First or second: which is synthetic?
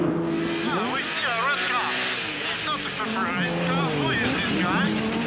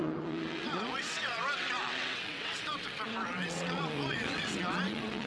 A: second